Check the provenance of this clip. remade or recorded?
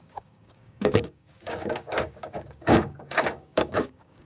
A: remade